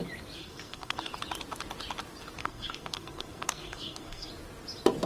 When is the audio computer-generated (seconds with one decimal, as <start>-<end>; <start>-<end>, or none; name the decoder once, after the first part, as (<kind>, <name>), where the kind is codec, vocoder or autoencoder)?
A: 0.4-1.1 (codec, SNAC); 2.4-4.3